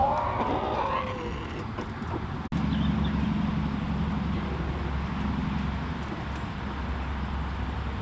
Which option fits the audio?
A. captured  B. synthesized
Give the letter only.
A